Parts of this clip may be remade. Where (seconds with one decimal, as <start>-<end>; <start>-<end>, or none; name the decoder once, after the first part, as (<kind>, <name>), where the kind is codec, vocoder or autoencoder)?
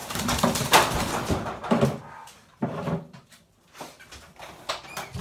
2.2-4.5 (vocoder, BigVGAN v2)